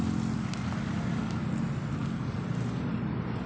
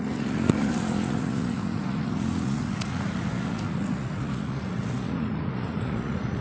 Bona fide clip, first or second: first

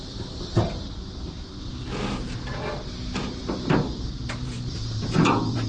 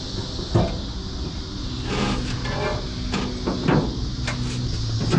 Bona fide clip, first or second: second